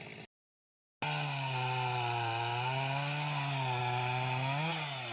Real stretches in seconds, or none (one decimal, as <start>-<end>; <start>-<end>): 0.0-5.1